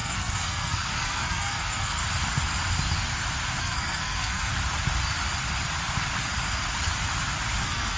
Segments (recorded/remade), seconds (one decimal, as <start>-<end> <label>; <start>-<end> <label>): 0.0-2.0 remade; 2.0-3.6 recorded; 3.6-4.5 remade; 4.5-7.6 recorded; 7.6-8.0 remade